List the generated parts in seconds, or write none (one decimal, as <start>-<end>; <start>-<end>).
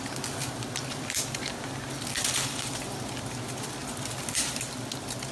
none